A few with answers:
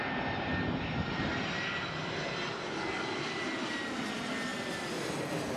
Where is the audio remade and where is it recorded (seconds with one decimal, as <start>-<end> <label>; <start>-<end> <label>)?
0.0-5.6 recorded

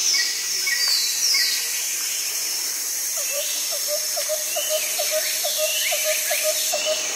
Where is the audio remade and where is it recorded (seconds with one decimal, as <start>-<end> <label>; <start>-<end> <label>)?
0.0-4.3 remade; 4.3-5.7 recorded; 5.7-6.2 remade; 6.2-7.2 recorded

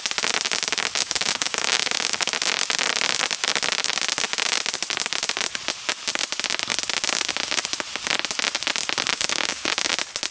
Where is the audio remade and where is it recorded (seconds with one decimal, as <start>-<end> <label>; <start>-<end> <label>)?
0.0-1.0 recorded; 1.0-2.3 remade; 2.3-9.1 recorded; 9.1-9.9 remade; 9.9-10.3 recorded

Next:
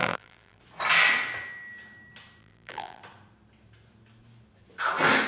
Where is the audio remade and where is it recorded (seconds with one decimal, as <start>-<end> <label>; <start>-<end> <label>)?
0.0-0.6 remade; 0.6-2.4 recorded; 2.4-3.0 remade; 3.0-5.3 recorded

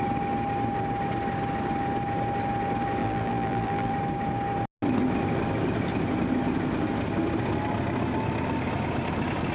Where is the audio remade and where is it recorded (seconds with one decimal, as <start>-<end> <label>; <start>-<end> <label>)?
0.0-3.0 recorded; 3.0-3.9 remade; 3.9-9.5 recorded

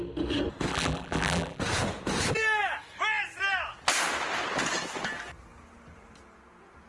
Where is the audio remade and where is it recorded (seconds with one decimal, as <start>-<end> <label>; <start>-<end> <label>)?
0.0-0.7 recorded; 0.7-1.6 remade; 1.6-6.9 recorded

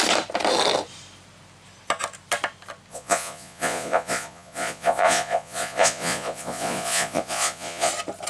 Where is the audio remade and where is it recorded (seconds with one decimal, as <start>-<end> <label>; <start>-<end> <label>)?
0.0-2.9 recorded; 2.9-7.9 remade; 7.9-8.3 recorded

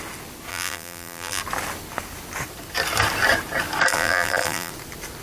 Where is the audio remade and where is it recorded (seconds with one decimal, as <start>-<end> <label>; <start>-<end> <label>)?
0.0-0.5 recorded; 0.5-1.4 remade; 1.4-3.9 recorded; 3.9-4.7 remade; 4.7-5.2 recorded